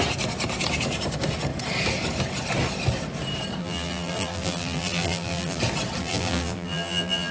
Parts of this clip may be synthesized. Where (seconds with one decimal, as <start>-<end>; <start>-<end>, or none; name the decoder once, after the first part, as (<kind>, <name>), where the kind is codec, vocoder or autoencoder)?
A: 3.6-5.6 (vocoder, BigVGAN v2); 6.0-7.3